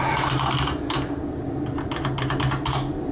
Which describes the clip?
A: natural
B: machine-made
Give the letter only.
A